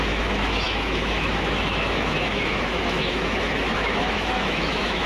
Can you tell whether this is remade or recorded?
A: remade